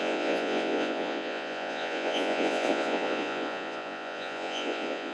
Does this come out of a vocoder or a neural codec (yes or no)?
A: yes